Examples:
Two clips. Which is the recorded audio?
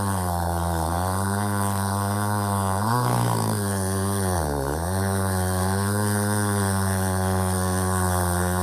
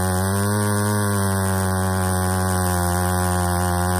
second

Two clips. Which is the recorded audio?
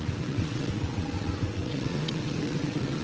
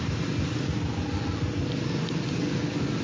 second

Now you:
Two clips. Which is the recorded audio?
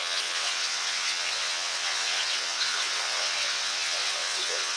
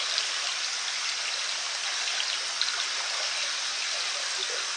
second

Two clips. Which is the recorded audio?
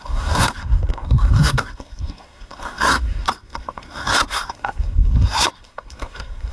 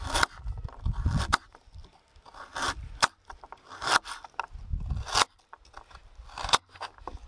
second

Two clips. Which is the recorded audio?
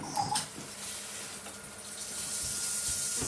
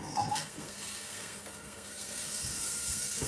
first